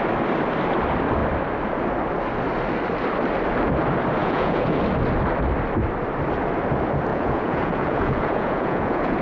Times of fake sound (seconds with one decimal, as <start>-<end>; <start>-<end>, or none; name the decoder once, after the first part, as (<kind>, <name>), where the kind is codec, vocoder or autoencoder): 4.2-4.8 (vocoder, Vocos); 7.1-9.2